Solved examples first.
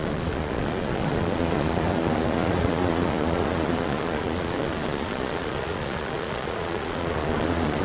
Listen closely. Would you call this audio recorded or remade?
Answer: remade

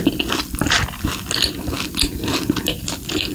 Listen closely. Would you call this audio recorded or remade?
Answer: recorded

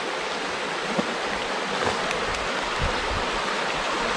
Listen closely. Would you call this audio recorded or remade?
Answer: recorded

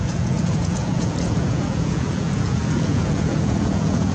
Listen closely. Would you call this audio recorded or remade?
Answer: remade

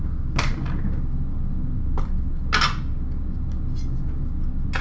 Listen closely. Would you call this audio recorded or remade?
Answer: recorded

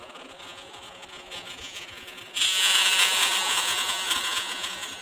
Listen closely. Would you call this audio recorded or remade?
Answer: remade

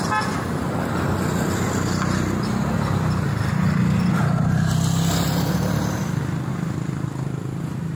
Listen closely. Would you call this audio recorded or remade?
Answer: recorded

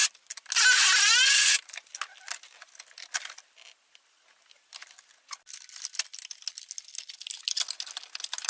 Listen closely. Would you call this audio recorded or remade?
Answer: recorded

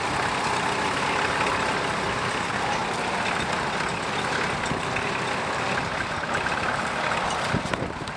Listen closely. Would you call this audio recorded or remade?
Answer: recorded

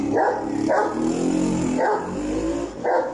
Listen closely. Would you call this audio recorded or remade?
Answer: recorded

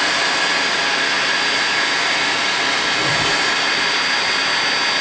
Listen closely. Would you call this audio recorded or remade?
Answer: recorded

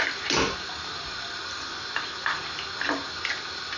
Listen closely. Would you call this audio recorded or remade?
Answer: recorded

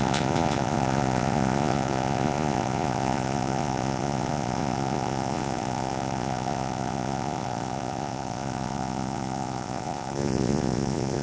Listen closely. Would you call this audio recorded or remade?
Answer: remade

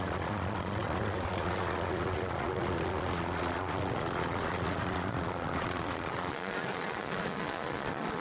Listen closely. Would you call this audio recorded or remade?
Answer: remade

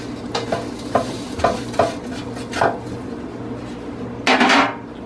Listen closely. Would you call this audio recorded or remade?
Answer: recorded